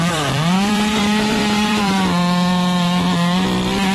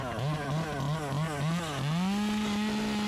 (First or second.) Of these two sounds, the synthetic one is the first